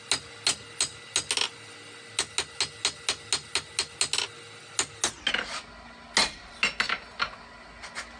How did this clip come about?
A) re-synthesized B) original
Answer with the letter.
B